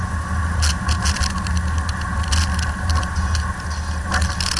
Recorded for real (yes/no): yes